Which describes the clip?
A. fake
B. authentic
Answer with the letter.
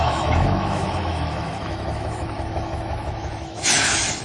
A